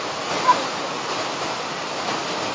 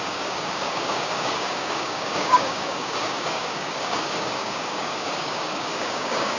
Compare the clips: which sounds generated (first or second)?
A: second